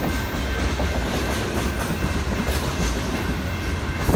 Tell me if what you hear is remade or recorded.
recorded